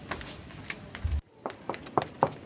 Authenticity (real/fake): real